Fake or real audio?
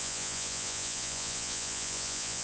fake